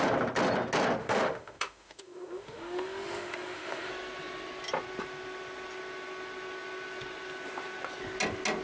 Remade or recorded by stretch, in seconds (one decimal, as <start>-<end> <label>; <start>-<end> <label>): 0.0-1.0 recorded; 1.0-3.9 remade; 3.9-8.6 recorded